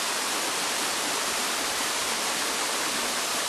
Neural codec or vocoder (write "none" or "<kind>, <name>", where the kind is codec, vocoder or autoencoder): none